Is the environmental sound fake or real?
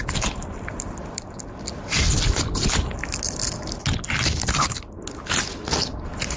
real